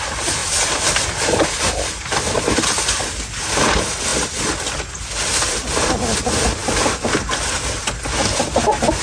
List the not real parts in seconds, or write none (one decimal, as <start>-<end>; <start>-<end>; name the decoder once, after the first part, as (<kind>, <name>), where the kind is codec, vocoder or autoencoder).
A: none